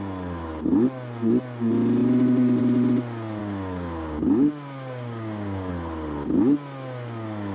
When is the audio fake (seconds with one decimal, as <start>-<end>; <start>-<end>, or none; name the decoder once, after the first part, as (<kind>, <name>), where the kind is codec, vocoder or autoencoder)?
3.4-5.7 (codec, DAC)